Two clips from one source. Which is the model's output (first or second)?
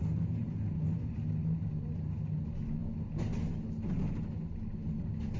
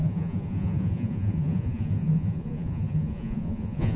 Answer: second